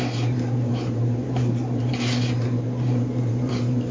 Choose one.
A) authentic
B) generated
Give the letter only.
B